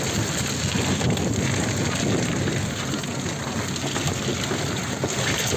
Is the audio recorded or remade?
recorded